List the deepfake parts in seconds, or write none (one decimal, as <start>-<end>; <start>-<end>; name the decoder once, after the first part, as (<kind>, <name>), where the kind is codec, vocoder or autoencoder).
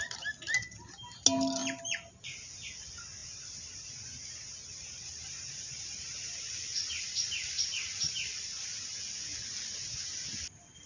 3.2-3.9 (vocoder, BigVGAN v2); 4.6-8.7